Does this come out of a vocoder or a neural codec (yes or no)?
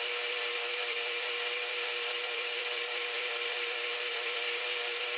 yes